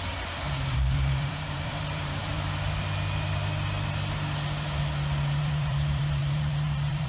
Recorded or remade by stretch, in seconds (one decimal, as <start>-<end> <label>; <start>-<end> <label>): 0.0-2.3 remade; 2.3-5.4 recorded; 5.4-7.1 remade